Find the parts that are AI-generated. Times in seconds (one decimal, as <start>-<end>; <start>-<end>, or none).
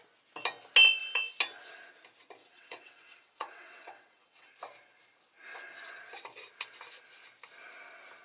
2.4-4.5